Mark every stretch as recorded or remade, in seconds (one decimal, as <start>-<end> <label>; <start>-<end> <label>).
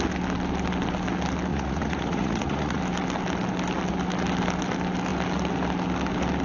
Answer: 0.0-1.5 recorded; 1.5-2.8 remade; 2.8-6.4 recorded